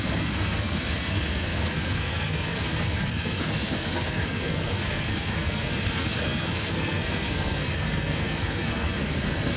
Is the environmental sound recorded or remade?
remade